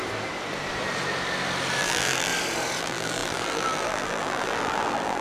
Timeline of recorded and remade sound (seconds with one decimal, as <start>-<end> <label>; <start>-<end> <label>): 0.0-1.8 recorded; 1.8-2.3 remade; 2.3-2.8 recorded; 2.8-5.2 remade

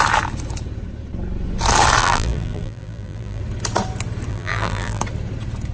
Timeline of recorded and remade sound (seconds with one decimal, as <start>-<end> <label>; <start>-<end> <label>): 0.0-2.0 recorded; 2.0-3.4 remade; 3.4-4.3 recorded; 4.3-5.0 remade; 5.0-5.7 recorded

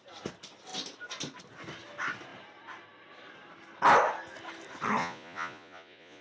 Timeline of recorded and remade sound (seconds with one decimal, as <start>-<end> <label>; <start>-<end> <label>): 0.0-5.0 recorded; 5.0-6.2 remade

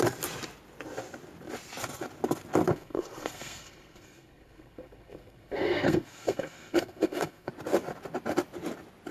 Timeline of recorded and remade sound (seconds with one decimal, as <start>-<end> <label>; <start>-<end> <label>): 0.0-2.7 recorded; 2.7-7.5 remade; 7.5-9.1 recorded

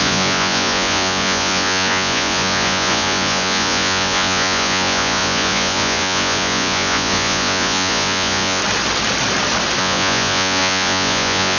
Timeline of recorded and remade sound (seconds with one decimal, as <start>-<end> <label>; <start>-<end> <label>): 0.0-8.6 remade; 8.6-9.8 recorded; 9.8-11.6 remade

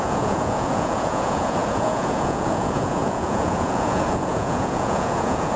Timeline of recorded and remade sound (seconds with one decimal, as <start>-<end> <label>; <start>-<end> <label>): 0.0-5.6 remade

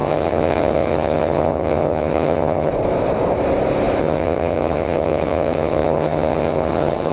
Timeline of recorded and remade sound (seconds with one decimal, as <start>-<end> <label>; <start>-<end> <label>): 0.0-2.7 remade; 2.7-4.0 recorded; 4.0-7.1 remade

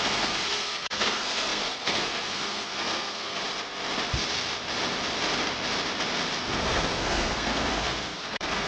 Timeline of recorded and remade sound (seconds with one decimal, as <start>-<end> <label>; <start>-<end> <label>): 0.0-3.4 remade; 3.4-6.4 recorded; 6.4-8.7 remade